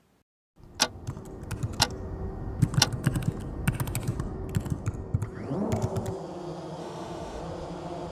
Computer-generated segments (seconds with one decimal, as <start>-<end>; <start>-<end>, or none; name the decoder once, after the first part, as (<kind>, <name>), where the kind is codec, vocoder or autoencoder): 6.8-7.4 (autoencoder, DAC-VAE)